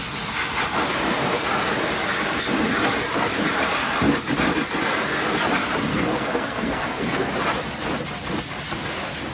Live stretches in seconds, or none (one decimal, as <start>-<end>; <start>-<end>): 0.0-5.9; 7.3-9.3